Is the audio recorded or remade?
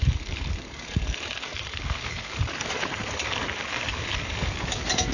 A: remade